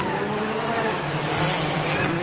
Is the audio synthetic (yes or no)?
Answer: no